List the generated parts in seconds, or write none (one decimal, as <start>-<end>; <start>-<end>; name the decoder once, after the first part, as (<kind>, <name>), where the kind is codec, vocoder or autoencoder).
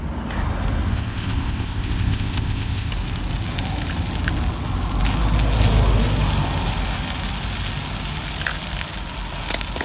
0.9-2.9 (codec, ZipCodec)